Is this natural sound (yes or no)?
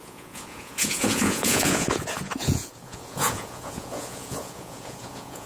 no